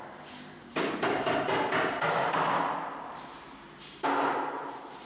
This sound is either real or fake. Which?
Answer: real